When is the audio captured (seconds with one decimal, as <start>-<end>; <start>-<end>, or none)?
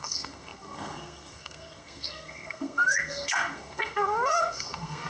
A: none